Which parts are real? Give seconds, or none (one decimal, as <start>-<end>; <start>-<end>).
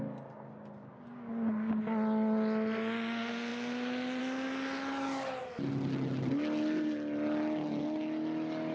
0.0-8.7